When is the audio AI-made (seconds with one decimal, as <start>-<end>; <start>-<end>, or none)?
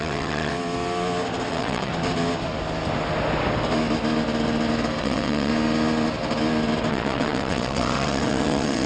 0.0-0.5; 1.5-1.9; 5.0-5.5; 6.9-8.9